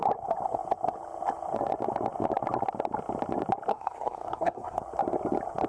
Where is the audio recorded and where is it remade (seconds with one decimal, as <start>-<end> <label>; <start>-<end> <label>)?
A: 0.0-3.7 recorded; 3.7-4.8 remade; 4.8-5.7 recorded